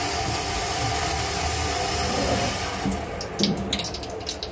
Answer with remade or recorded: recorded